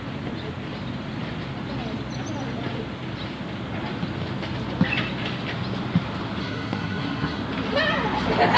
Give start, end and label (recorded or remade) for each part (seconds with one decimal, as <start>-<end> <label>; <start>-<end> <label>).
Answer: 0.0-6.4 recorded; 6.4-7.4 remade; 7.4-8.6 recorded